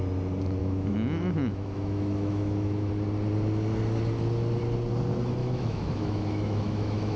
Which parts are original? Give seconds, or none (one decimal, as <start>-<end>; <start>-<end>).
0.0-0.6; 2.9-5.4